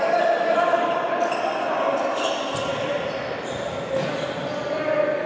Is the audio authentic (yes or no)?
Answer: no